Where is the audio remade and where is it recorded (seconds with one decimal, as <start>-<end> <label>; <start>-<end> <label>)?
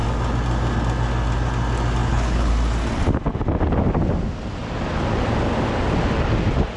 0.0-2.0 recorded; 2.0-2.5 remade; 2.5-6.8 recorded